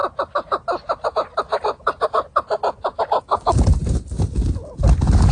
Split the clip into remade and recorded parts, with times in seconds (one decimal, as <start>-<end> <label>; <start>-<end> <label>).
0.0-3.7 recorded; 3.7-4.2 remade; 4.2-5.3 recorded

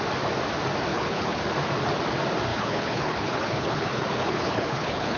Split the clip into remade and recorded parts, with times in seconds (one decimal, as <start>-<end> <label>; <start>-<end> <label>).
0.0-0.9 recorded; 0.9-1.4 remade; 1.4-2.5 recorded; 2.5-5.2 remade

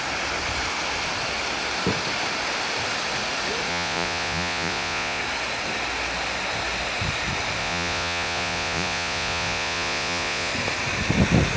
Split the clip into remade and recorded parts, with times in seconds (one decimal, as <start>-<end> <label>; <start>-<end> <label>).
0.0-3.7 recorded; 3.7-5.2 remade; 5.2-7.6 recorded; 7.6-10.5 remade; 10.5-11.6 recorded

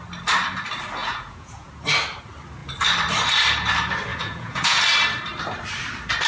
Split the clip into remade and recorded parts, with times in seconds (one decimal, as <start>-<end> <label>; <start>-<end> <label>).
0.0-1.0 recorded; 1.0-1.7 remade; 1.7-4.1 recorded; 4.1-4.8 remade; 4.8-6.3 recorded

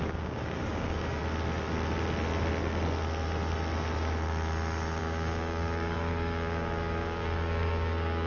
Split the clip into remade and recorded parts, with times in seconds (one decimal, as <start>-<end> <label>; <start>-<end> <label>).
0.0-1.2 remade; 1.2-5.0 recorded; 5.0-8.3 remade

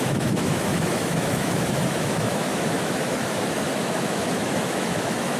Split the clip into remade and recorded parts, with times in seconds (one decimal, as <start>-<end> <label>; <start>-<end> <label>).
0.0-5.4 remade